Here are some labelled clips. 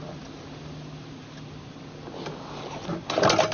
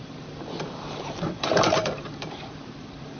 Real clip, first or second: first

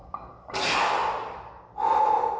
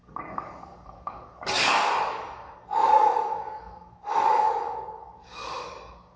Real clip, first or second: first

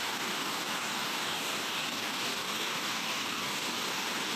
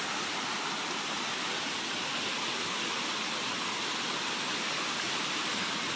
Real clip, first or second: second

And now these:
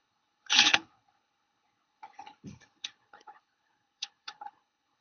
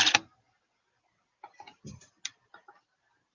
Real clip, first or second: second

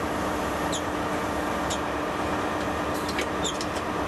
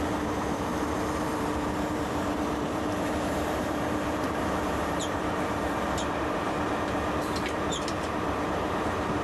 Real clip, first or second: first